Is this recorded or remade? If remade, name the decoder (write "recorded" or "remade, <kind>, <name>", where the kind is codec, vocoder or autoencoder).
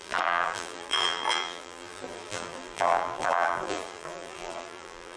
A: remade, vocoder, BigVGAN v2